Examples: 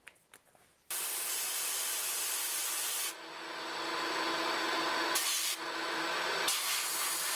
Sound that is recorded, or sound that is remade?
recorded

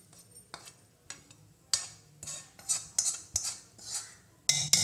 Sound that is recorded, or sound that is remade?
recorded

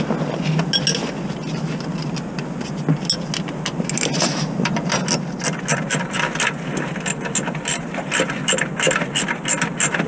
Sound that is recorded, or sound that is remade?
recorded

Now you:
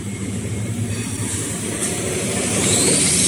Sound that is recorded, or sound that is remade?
remade